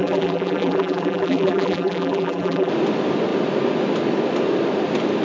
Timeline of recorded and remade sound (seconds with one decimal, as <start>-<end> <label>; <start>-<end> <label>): 0.0-2.7 remade; 2.7-5.2 recorded